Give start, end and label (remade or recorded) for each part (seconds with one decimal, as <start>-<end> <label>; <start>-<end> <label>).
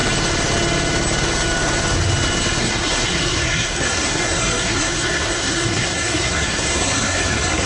0.0-2.6 recorded; 2.6-7.7 remade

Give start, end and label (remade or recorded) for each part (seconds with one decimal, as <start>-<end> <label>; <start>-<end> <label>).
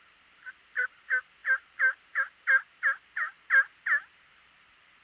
0.0-5.0 remade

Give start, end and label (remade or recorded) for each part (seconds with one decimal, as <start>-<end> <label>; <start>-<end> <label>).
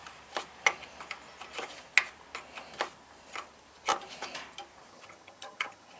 0.0-4.9 recorded; 4.9-6.0 remade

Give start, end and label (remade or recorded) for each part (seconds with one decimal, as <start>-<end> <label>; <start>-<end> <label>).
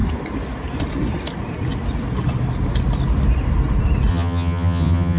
0.0-4.1 recorded; 4.1-5.2 remade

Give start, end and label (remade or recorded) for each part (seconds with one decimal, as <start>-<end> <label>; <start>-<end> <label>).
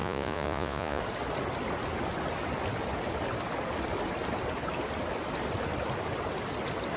0.0-1.0 remade; 1.0-7.0 recorded